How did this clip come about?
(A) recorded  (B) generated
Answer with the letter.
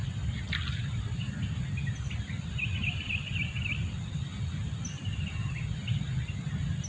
A